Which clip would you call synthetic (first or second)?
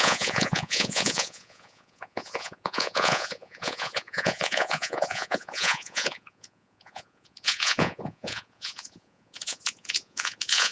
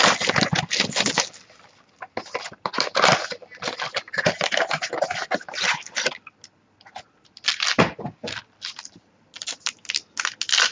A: first